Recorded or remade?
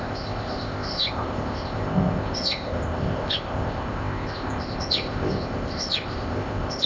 remade